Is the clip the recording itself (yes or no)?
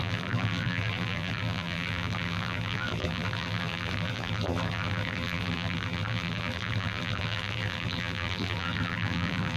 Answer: no